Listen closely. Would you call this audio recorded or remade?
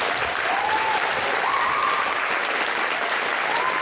recorded